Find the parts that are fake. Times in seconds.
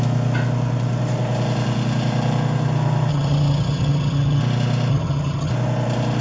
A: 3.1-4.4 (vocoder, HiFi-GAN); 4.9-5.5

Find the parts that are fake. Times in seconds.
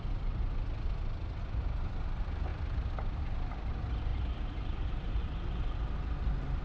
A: none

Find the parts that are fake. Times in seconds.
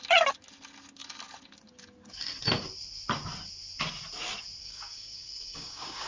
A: 4.6-6.1 (codec, DAC)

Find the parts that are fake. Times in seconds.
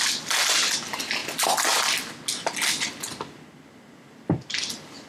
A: none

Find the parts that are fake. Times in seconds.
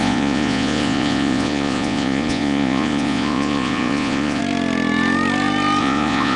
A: 0.0-4.4 (vocoder, Vocos); 5.8-6.4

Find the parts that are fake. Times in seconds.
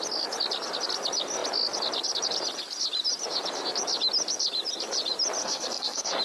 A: 5.4-6.2 (codec, SNAC)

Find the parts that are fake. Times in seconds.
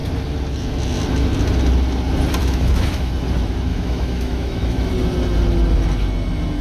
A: 2.4-3.1 (autoencoder, DAC-VAE); 3.7-4.9